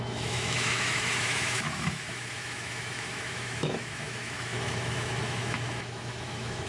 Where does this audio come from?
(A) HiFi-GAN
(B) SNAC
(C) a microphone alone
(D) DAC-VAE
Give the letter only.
D